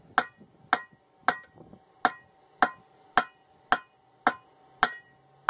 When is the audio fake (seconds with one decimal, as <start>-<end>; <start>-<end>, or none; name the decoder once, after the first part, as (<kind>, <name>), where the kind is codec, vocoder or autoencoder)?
none